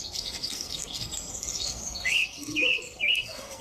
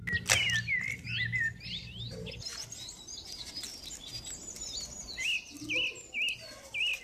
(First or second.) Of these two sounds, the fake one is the first